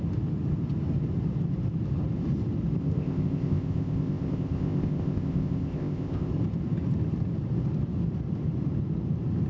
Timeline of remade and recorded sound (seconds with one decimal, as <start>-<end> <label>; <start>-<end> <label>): 0.0-2.8 recorded; 2.8-6.3 remade; 6.3-9.5 recorded